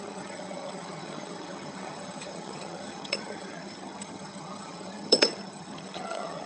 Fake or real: fake